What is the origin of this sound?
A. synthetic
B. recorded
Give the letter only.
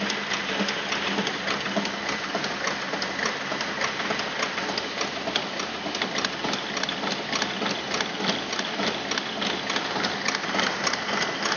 B